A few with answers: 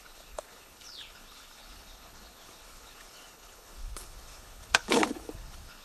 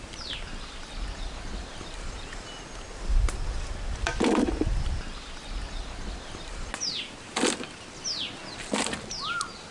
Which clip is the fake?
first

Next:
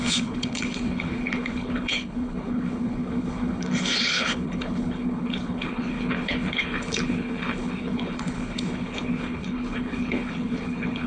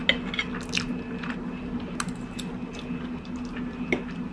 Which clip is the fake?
first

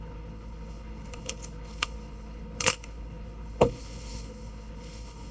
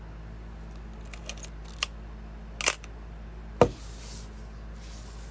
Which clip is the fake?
first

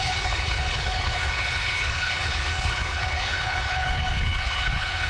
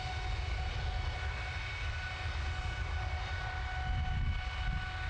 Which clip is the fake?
first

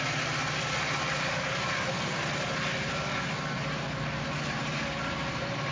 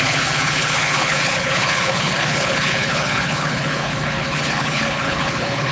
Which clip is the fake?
second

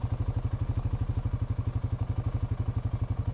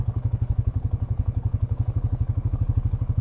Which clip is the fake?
second